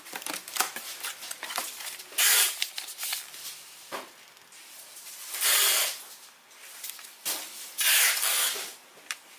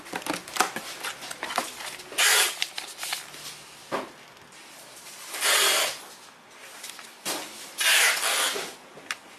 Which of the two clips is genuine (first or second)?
second